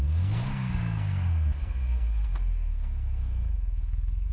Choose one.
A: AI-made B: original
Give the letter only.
A